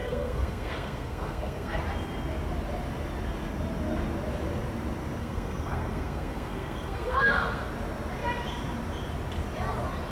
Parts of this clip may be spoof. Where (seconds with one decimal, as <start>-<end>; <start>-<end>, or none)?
0.0-1.8; 5.2-7.7